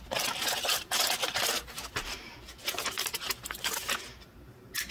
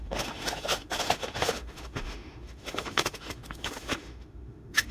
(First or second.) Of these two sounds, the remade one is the second